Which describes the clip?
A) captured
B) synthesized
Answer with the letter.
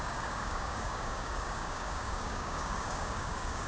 B